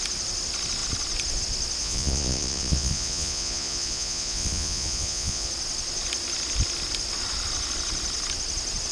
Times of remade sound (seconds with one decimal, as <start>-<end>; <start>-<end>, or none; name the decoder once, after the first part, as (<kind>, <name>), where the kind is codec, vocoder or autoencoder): 1.8-5.5 (vocoder, Vocos)